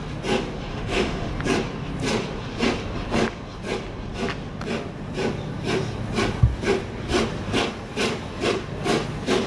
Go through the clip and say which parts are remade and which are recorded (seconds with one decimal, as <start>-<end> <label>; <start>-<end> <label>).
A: 0.0-0.7 recorded; 0.7-1.3 remade; 1.3-9.5 recorded